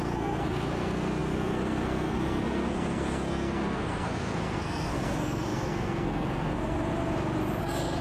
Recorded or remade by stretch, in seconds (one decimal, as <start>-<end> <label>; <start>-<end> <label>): 0.0-6.9 remade; 6.9-7.6 recorded; 7.6-8.0 remade